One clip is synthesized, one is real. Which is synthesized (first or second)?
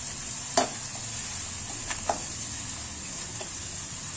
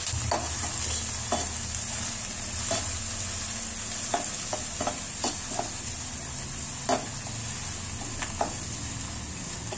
first